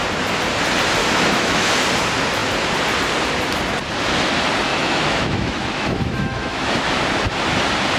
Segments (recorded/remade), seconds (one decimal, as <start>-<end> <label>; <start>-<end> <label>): 0.0-1.0 recorded; 1.0-1.7 remade; 1.7-4.7 recorded; 4.7-6.7 remade; 6.7-8.0 recorded